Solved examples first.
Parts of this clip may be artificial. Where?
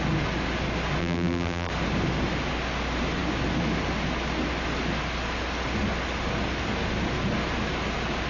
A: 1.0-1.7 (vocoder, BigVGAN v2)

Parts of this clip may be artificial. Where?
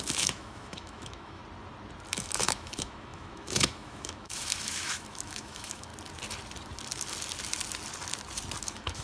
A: 0.0-1.4 (autoencoder, DAC-VAE); 2.1-5.9; 8.6-9.0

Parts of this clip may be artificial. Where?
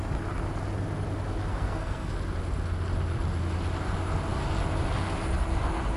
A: 1.5-2.1 (codec, SNAC)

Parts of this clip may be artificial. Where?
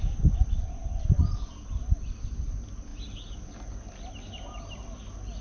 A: none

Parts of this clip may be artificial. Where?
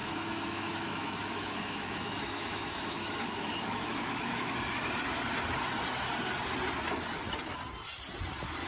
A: 0.0-4.6 (autoencoder, DAC-VAE)